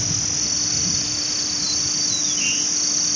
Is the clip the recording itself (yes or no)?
yes